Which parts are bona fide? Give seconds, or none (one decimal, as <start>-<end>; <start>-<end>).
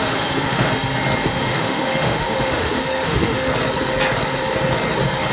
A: 0.7-1.4; 3.5-5.3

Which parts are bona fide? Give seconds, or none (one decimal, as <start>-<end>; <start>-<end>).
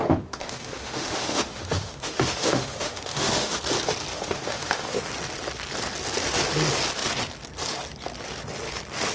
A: 3.6-4.1; 5.0-9.1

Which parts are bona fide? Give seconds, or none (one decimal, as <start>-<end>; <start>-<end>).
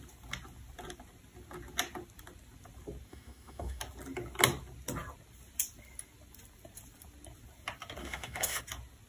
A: 0.0-3.1; 3.8-8.0; 8.6-9.1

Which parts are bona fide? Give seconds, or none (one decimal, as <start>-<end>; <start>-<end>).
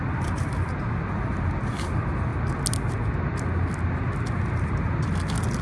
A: 0.0-5.6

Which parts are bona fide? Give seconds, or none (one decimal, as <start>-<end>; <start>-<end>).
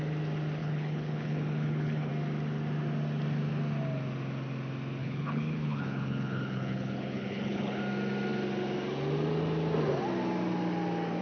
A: 0.0-0.6; 2.1-5.0; 7.8-11.2